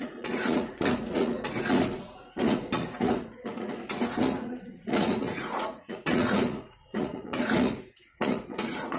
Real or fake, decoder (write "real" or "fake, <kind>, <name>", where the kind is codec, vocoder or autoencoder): fake, vocoder, Vocos